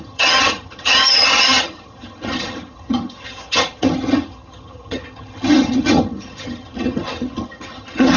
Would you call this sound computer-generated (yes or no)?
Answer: yes